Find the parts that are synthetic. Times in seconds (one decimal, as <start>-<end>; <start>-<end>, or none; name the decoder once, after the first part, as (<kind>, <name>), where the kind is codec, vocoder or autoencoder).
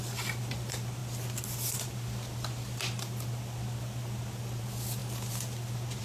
none